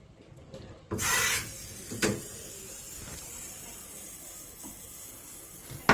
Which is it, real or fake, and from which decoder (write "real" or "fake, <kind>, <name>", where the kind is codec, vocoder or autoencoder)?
real